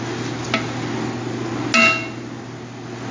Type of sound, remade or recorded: recorded